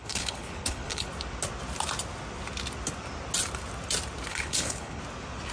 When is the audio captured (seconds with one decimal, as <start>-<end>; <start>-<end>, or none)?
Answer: 1.1-4.3; 5.0-5.5

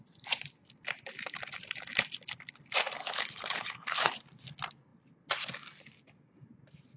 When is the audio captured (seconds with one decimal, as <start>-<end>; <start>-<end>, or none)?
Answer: 0.0-3.0; 4.2-7.0

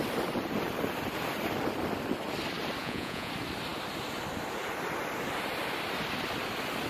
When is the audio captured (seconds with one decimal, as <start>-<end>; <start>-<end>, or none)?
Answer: 0.0-2.8; 3.3-6.9

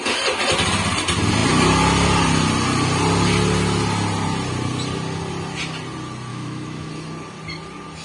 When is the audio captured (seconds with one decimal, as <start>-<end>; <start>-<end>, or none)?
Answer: 0.0-6.3; 6.9-8.0

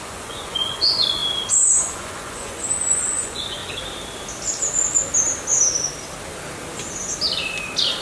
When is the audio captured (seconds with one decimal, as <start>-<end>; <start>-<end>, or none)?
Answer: 1.2-1.7; 3.6-8.0